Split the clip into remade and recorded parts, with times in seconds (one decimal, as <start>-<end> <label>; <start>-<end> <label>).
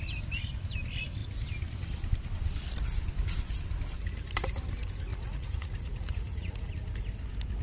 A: 0.0-5.1 recorded; 5.1-6.7 remade; 6.7-7.6 recorded